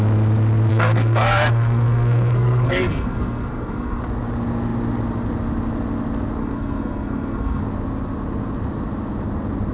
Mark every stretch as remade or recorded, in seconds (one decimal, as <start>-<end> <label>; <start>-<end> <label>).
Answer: 0.0-0.7 recorded; 0.7-4.0 remade; 4.0-6.4 recorded; 6.4-7.6 remade; 7.6-9.7 recorded